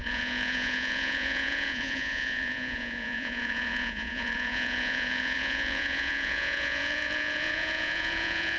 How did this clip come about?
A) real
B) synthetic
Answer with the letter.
B